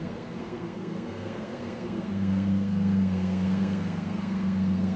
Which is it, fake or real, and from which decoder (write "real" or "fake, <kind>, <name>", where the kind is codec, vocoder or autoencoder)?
fake, codec, SNAC